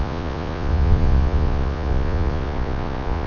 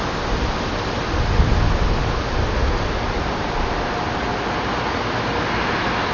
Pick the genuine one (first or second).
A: second